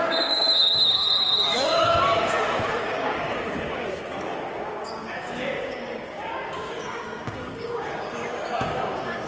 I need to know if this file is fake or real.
fake